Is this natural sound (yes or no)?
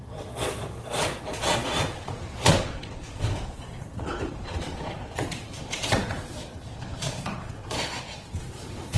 no